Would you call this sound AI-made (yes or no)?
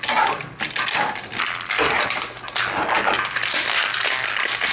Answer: no